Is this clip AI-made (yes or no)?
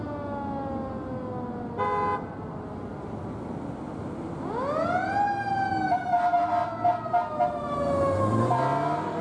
no